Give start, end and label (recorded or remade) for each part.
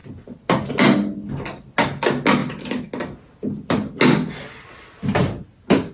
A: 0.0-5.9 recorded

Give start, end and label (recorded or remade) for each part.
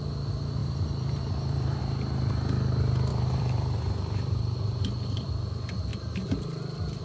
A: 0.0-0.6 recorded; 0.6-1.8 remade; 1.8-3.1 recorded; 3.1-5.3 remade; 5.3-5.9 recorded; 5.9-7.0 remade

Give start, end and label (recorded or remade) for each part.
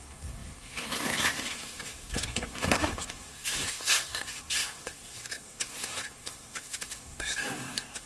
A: 0.0-8.1 remade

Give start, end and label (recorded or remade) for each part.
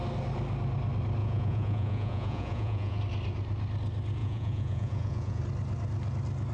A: 0.0-1.2 recorded; 1.2-3.0 remade; 3.0-4.2 recorded; 4.2-5.4 remade; 5.4-6.5 recorded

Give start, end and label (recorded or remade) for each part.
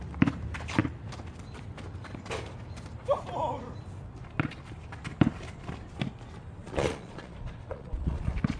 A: 0.0-6.6 recorded; 6.6-8.2 remade; 8.2-8.6 recorded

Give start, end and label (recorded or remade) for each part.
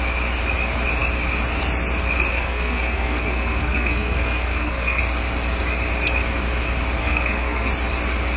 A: 0.0-2.3 recorded; 2.3-5.0 remade; 5.0-7.0 recorded; 7.0-7.7 remade; 7.7-8.4 recorded